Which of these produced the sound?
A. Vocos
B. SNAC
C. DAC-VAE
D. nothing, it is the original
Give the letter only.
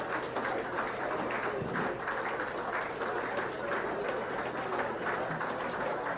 D